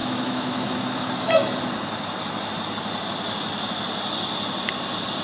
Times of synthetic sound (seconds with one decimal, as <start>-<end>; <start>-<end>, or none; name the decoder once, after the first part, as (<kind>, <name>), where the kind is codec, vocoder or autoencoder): 0.0-1.6 (autoencoder, DAC-VAE)